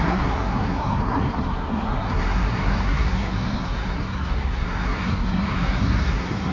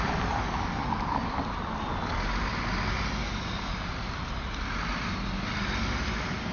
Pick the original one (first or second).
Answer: second